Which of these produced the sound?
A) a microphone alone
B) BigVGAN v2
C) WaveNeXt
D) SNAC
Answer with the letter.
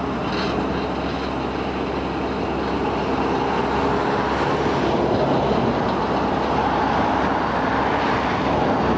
A